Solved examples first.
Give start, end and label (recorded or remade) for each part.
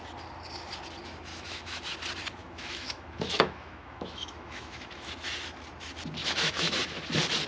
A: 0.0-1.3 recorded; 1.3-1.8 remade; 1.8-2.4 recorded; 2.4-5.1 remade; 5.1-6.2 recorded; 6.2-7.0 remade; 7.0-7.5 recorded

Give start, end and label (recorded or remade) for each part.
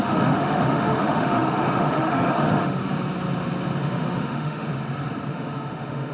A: 0.0-2.8 remade; 2.8-3.8 recorded; 3.8-4.7 remade; 4.7-5.3 recorded; 5.3-6.1 remade